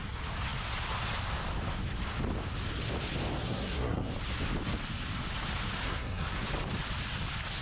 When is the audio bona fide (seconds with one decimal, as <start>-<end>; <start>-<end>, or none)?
0.0-3.4; 4.1-5.8; 6.5-7.6